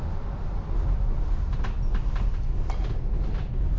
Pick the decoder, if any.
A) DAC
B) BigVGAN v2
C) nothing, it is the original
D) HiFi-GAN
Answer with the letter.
C